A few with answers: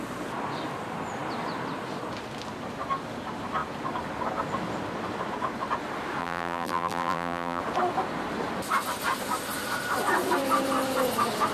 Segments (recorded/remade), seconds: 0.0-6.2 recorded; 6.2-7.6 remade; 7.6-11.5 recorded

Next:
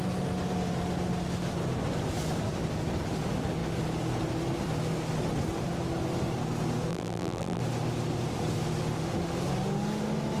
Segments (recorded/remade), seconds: 0.0-6.9 recorded; 6.9-7.6 remade; 7.6-10.4 recorded

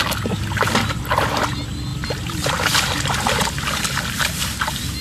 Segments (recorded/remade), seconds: 0.0-5.0 recorded